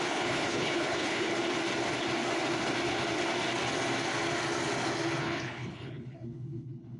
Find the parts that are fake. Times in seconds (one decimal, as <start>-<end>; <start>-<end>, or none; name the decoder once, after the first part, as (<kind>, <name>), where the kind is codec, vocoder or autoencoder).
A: 0.0-1.3 (codec, HILCodec); 5.2-7.0